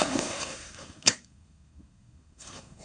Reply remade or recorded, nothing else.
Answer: remade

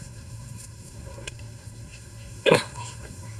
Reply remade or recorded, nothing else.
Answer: remade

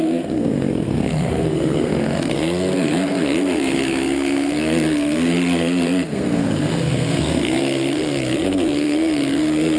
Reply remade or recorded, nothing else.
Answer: remade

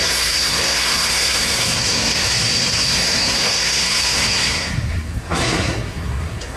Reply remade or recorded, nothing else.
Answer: remade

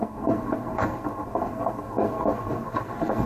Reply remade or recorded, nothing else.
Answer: remade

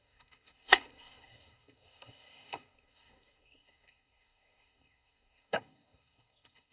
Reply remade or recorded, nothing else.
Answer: remade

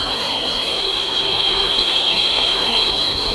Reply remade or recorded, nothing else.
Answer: remade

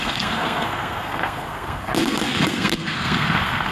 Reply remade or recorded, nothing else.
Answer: remade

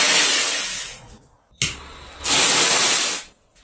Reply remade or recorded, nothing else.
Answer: recorded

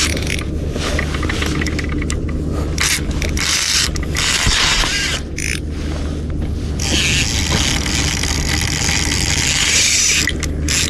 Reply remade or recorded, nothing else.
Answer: recorded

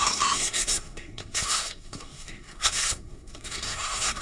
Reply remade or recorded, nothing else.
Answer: remade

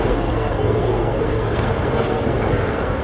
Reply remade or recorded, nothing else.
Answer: remade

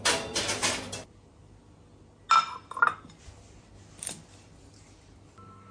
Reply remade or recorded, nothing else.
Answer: recorded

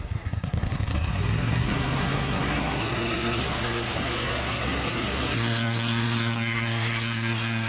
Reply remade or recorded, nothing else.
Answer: remade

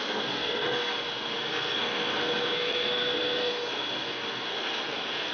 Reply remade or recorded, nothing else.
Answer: remade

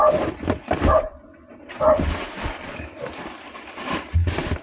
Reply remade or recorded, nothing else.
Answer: recorded